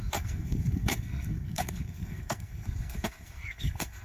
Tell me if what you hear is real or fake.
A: fake